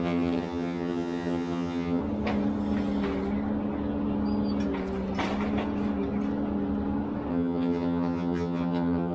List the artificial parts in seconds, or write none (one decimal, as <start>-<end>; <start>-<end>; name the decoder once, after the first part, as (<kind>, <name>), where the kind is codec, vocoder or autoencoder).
0.0-2.0 (vocoder, HiFi-GAN); 7.3-9.1